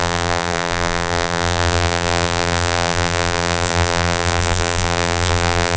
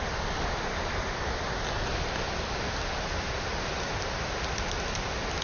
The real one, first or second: second